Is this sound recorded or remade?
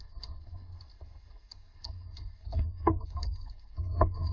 remade